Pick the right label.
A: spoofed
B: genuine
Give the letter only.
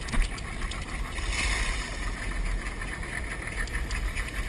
B